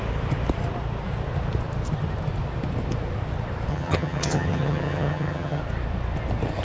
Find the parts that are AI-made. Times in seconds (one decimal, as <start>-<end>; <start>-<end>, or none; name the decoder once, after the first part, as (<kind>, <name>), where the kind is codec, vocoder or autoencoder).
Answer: 3.7-5.6 (vocoder, HiFi-GAN)